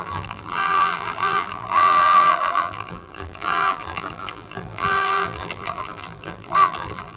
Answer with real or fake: fake